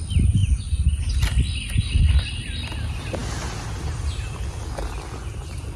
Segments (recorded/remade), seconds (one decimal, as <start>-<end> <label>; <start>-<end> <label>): 0.0-0.4 recorded; 0.4-1.0 remade; 1.0-5.8 recorded